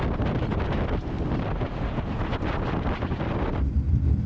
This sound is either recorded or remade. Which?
recorded